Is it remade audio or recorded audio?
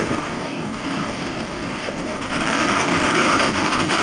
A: remade